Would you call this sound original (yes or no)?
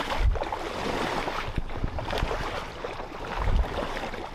no